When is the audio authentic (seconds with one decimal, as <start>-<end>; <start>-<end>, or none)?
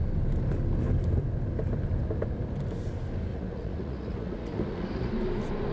0.0-3.3; 5.1-5.7